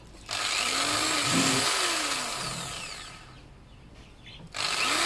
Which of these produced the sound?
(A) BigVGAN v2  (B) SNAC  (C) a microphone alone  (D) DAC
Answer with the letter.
C